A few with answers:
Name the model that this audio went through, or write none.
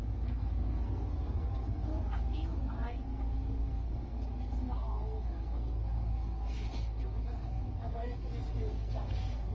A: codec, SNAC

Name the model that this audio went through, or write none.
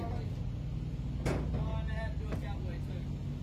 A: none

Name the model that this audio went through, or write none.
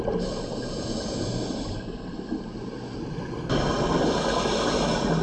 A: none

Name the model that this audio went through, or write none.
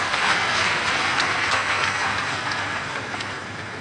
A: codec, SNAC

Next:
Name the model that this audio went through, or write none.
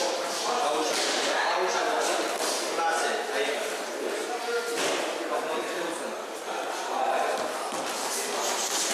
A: none